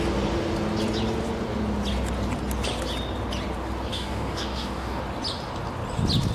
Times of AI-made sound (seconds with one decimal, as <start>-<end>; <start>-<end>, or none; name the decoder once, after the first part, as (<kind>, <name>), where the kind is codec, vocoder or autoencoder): 3.9-5.0 (codec, DAC)